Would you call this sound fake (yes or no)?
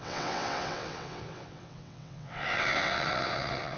yes